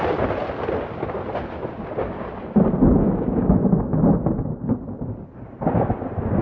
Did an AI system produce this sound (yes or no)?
no